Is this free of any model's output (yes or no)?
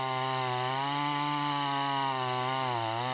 yes